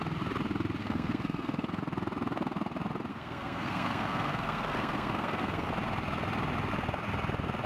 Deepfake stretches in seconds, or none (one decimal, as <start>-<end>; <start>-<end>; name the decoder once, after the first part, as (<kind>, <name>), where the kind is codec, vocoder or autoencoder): 0.8-1.8 (codec, SNAC); 3.1-5.7